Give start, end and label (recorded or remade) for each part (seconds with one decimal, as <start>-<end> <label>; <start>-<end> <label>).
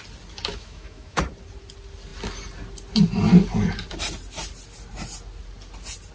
0.0-0.5 recorded; 0.5-1.2 remade; 1.2-6.1 recorded